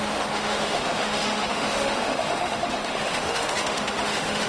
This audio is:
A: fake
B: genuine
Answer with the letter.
A